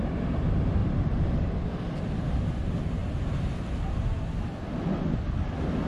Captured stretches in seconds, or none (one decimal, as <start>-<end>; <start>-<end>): 0.0-5.9